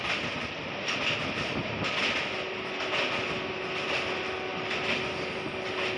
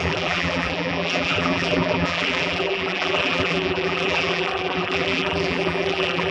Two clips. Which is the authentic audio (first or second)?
first